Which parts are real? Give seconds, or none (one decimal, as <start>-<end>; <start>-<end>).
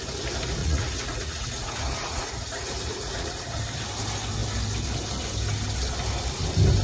0.0-0.6; 3.6-6.8